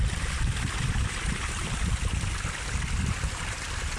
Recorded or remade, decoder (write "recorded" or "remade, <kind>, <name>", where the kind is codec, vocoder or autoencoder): recorded